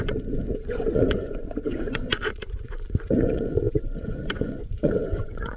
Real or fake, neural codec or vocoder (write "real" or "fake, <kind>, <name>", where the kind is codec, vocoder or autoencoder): fake, vocoder, Vocos